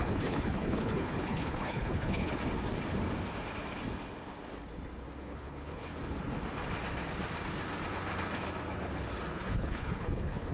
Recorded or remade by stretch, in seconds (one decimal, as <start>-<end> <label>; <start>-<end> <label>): 0.0-2.3 remade; 2.3-5.2 recorded; 5.2-5.9 remade; 5.9-9.3 recorded; 9.3-10.5 remade